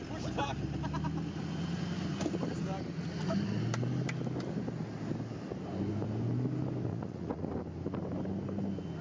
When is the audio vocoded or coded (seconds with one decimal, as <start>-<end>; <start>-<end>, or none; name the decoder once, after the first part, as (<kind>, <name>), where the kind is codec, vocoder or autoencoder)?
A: 6.9-7.5 (vocoder, Vocos)